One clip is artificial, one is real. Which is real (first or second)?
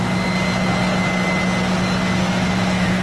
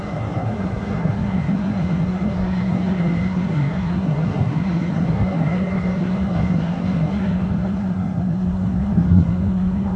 first